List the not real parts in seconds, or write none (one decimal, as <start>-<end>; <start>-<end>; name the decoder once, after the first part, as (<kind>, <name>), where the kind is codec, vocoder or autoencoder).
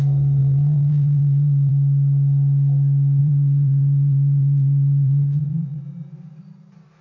0.4-1.7 (vocoder, BigVGAN v2); 3.2-5.8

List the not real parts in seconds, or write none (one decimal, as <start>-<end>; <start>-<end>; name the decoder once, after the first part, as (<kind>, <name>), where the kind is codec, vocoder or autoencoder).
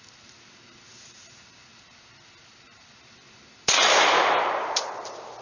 none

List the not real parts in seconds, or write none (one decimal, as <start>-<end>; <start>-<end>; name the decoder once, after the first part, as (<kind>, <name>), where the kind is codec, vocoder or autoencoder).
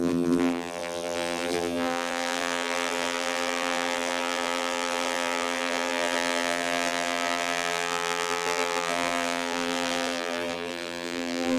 0.0-11.6 (vocoder, BigVGAN v2)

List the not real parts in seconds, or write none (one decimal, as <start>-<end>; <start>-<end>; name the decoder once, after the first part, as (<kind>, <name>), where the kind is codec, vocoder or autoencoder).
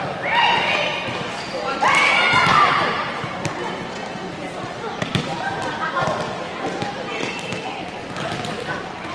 2.5-3.0 (vocoder, BigVGAN v2); 4.4-5.5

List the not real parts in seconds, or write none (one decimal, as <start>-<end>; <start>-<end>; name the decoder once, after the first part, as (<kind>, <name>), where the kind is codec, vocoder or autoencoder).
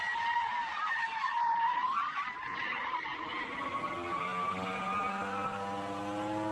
none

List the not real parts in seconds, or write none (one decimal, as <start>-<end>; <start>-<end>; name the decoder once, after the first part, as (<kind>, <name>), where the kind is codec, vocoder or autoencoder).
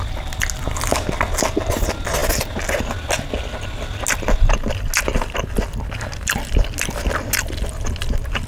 none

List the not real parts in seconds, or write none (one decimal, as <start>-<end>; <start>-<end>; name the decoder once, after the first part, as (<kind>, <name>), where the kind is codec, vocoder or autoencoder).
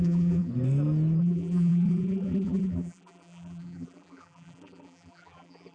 0.0-0.5 (vocoder, BigVGAN v2); 1.2-5.7